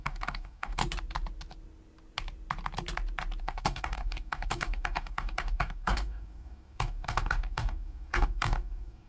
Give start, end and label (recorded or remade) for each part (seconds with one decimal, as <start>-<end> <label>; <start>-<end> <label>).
0.0-0.8 remade; 0.8-3.4 recorded; 3.4-9.1 remade